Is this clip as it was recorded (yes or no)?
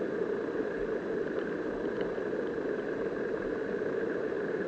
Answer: yes